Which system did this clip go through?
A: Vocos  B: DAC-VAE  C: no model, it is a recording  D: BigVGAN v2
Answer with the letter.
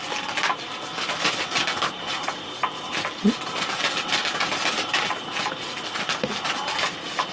C